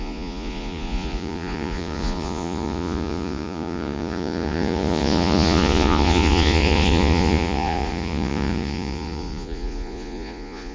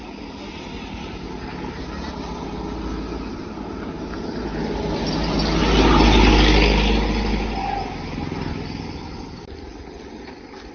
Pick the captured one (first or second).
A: second